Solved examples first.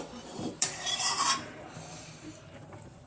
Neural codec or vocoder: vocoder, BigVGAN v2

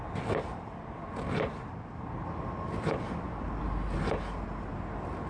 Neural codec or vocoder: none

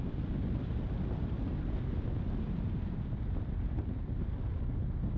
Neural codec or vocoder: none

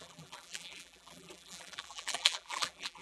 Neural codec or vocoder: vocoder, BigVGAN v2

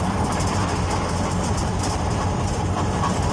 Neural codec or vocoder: vocoder, BigVGAN v2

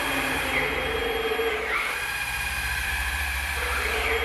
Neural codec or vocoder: vocoder, BigVGAN v2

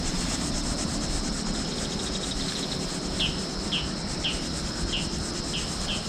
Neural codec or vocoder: none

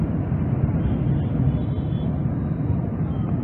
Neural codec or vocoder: none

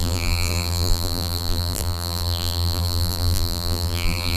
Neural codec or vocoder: vocoder, BigVGAN v2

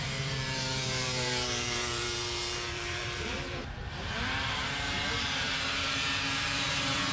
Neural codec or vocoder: vocoder, BigVGAN v2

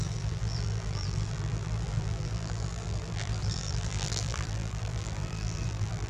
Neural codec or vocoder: vocoder, BigVGAN v2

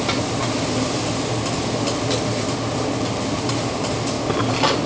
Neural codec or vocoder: none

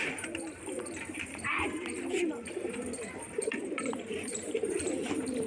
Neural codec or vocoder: vocoder, BigVGAN v2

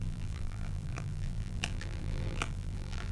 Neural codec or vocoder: vocoder, BigVGAN v2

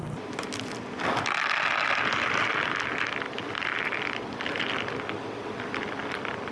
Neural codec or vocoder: none